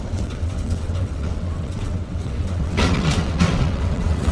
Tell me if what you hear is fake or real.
fake